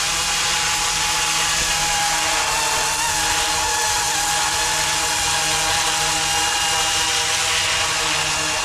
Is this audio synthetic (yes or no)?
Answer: no